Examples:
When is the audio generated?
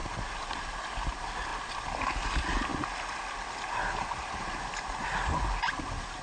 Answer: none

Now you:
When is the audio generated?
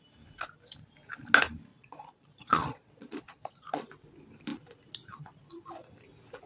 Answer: 1.7-3.9 (vocoder, Vocos)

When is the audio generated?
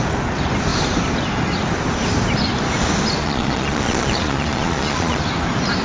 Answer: 3.2-5.2 (vocoder, Vocos)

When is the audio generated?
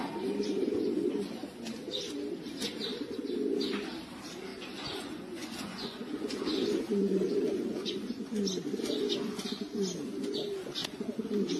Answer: 4.5-8.2 (vocoder, Vocos); 10.8-11.6